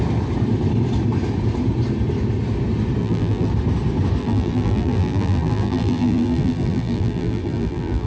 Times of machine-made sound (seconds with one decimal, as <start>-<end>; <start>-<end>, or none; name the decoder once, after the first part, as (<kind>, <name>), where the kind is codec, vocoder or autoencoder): 3.0-3.5 (vocoder, BigVGAN v2); 4.2-8.1